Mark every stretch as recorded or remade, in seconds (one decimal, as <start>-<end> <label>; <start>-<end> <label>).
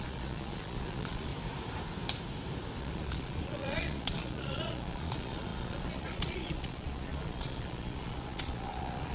0.0-1.3 remade; 1.3-2.8 recorded; 2.8-9.1 remade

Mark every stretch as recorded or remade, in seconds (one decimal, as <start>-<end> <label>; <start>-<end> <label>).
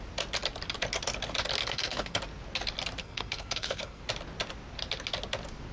0.0-1.6 recorded; 1.6-2.2 remade; 2.2-3.0 recorded; 3.0-4.0 remade; 4.0-5.7 recorded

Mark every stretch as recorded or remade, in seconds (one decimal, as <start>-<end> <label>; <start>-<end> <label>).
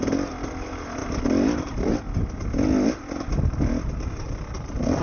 0.0-5.0 recorded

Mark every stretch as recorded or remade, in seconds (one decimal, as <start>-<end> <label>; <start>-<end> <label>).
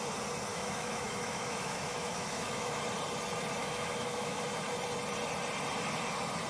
0.0-0.5 recorded; 0.5-2.8 remade; 2.8-3.6 recorded; 3.6-4.4 remade; 4.4-6.5 recorded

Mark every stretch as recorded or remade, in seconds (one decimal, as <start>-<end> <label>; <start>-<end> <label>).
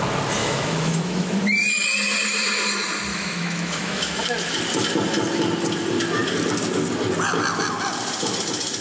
0.0-0.4 recorded; 0.4-1.3 remade; 1.3-3.1 recorded; 3.1-4.2 remade; 4.2-8.8 recorded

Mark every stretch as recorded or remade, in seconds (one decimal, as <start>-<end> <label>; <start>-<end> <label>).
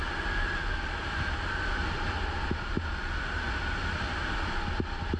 0.0-5.2 recorded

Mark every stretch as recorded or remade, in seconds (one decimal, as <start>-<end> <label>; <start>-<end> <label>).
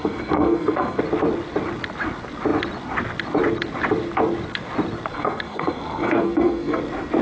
0.0-1.0 remade; 1.0-5.1 recorded; 5.1-6.8 remade; 6.8-7.2 recorded